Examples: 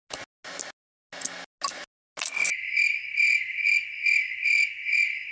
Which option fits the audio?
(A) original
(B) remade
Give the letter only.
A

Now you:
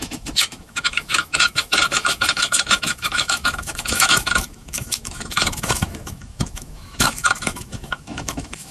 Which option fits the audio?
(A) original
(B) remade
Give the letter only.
B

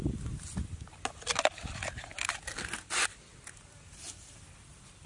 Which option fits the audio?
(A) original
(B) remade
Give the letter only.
A